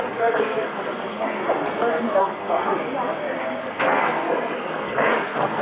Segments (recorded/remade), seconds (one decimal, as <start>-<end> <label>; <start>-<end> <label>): 0.0-1.4 remade; 1.4-2.2 recorded; 2.2-2.7 remade; 2.7-3.6 recorded; 3.6-5.6 remade